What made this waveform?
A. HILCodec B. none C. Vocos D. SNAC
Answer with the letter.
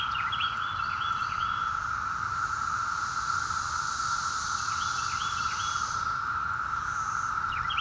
B